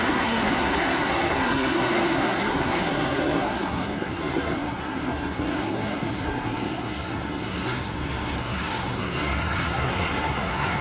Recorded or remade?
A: remade